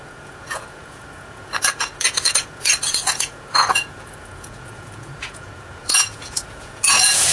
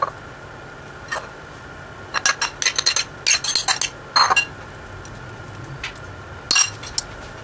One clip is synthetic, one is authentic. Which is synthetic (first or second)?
first